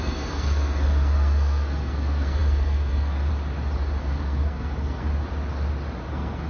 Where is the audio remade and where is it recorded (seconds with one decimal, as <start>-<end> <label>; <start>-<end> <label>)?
0.0-3.3 remade; 3.3-4.0 recorded; 4.0-5.1 remade; 5.1-6.1 recorded; 6.1-6.5 remade